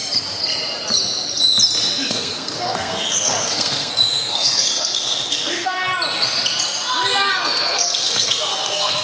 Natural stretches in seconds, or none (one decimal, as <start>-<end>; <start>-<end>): 0.0-2.1; 5.9-7.3